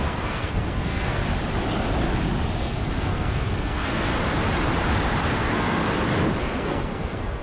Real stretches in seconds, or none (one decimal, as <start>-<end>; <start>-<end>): 1.2-2.6; 4.1-5.3; 5.8-6.4

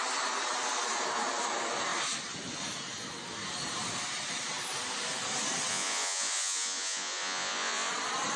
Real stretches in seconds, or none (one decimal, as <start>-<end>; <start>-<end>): 0.0-5.7; 7.9-8.4